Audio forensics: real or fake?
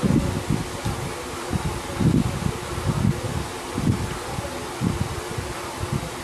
real